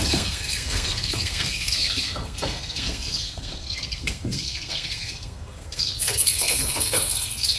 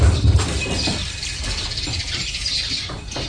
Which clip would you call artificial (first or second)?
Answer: first